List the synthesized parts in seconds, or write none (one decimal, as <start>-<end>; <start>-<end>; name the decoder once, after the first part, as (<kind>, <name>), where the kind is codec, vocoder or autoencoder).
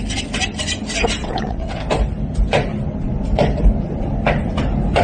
1.2-1.8 (vocoder, WaveNeXt)